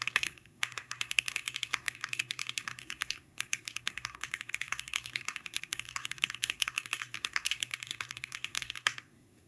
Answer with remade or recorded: remade